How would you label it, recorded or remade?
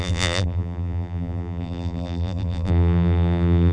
remade